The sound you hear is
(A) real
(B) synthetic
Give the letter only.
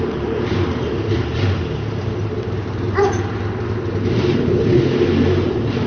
B